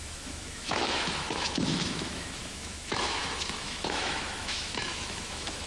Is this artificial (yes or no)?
yes